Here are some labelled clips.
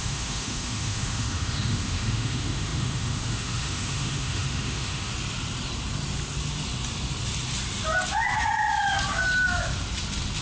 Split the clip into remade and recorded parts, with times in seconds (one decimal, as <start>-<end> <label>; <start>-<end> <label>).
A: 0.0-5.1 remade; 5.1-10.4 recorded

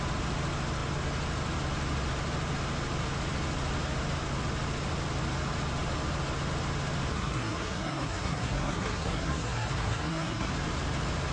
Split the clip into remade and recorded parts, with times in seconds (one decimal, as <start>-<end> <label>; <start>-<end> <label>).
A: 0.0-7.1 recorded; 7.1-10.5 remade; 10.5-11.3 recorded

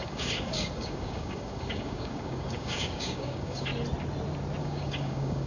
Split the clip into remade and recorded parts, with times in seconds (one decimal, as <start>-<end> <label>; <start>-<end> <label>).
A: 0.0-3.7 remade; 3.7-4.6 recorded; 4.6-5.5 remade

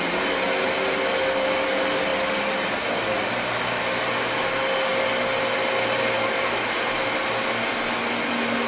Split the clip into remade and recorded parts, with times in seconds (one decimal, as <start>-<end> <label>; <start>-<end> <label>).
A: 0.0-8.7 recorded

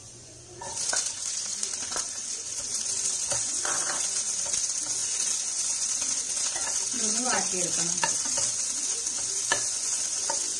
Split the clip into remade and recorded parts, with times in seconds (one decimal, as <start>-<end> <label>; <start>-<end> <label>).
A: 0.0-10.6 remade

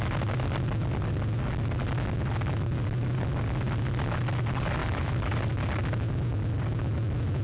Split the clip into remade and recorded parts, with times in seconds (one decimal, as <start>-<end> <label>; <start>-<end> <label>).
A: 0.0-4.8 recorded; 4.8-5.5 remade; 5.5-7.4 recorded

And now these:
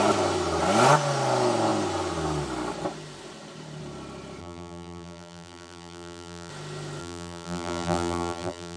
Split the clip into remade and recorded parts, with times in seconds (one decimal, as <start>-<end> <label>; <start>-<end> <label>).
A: 0.0-4.4 recorded; 4.4-6.5 remade; 6.5-7.0 recorded; 7.0-8.8 remade

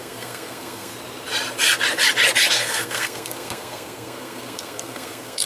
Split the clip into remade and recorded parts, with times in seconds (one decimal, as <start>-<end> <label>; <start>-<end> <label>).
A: 0.0-0.9 remade; 0.9-2.5 recorded; 2.5-5.5 remade